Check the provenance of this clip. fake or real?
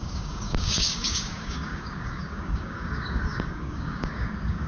fake